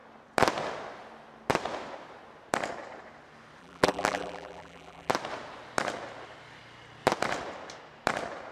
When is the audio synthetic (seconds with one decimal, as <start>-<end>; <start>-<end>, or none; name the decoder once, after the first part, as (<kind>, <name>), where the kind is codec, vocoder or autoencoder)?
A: 3.6-5.1 (vocoder, BigVGAN v2)